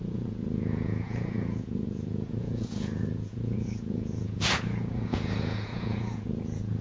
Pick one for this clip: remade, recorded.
remade